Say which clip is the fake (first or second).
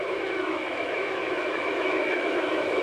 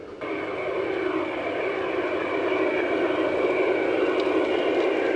first